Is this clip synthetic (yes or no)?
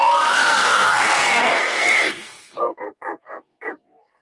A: yes